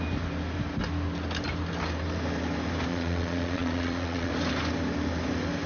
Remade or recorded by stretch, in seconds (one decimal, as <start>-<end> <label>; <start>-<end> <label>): 0.0-2.9 recorded; 2.9-4.3 remade; 4.3-5.7 recorded